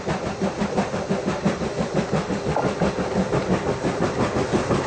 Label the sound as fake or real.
real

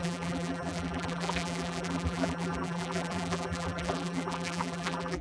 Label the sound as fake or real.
fake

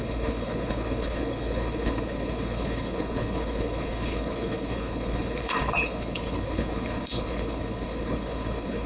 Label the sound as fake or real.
fake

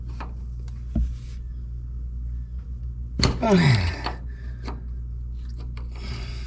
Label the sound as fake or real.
real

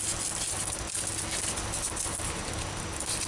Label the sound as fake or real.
real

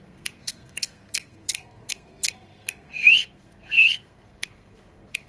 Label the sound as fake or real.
fake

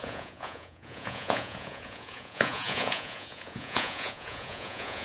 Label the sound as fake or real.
fake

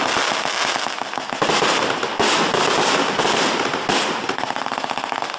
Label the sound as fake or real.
real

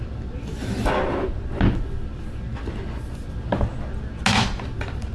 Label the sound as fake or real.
real